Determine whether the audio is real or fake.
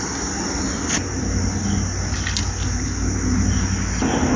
real